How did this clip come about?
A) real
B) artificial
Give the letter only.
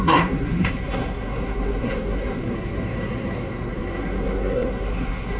B